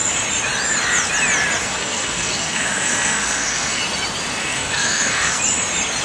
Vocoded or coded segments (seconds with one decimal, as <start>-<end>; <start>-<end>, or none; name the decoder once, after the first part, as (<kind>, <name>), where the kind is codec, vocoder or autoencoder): 1.6-3.8 (codec, SNAC); 4.4-5.4